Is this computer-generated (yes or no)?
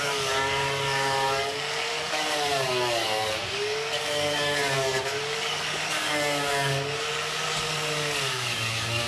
yes